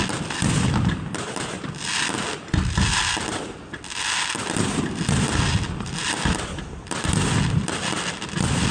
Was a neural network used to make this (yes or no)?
no